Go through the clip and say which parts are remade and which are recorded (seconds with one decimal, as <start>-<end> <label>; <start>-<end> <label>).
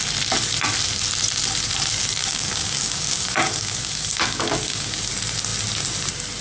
0.0-2.2 recorded; 2.2-5.1 remade; 5.1-6.4 recorded